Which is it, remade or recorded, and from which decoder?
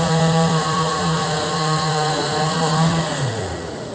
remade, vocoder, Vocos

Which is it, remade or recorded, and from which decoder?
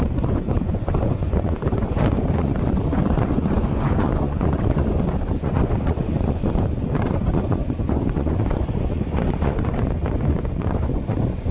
remade, vocoder, Vocos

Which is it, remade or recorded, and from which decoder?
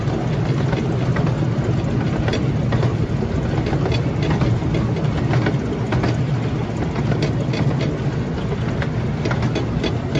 recorded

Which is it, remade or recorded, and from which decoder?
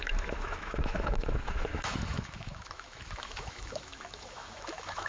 remade, autoencoder, DAC-VAE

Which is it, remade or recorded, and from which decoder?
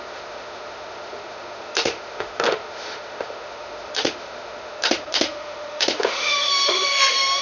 remade, autoencoder, DAC-VAE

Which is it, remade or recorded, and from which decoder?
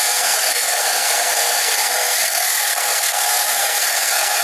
remade, codec, SNAC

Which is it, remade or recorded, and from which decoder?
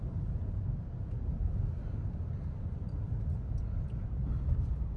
recorded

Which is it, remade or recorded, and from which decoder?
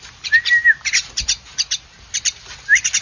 recorded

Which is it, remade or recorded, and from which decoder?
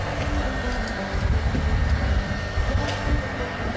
recorded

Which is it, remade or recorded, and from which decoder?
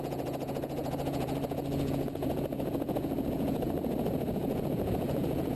remade, vocoder, Vocos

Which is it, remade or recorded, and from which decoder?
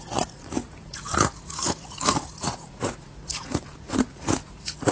remade, vocoder, Vocos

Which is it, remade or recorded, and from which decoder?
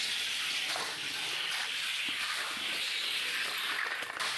remade, vocoder, BigVGAN v2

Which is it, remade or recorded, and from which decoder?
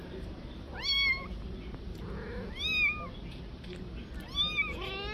recorded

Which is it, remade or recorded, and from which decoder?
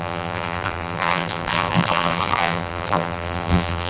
remade, vocoder, BigVGAN v2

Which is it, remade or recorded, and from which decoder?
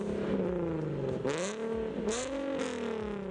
recorded